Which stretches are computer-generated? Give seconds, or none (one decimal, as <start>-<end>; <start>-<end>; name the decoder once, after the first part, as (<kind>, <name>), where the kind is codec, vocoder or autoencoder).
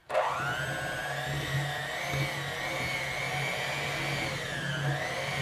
none